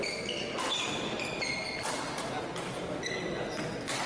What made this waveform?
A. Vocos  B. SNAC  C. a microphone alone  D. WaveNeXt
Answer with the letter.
C